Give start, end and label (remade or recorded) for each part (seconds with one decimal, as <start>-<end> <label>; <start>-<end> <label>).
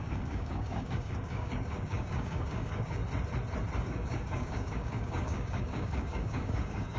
0.0-3.0 remade; 3.0-3.8 recorded; 3.8-7.0 remade